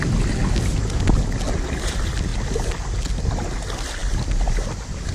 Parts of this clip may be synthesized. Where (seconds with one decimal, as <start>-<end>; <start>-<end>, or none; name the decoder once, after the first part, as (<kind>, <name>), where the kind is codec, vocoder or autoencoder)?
none